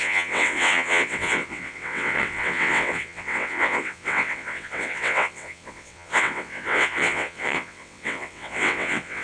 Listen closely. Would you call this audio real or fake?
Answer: fake